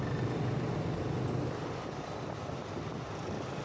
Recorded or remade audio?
recorded